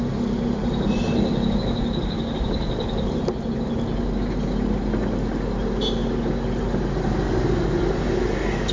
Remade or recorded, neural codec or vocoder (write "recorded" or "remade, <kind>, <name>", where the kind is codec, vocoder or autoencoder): recorded